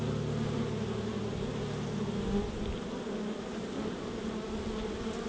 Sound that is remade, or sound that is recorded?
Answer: recorded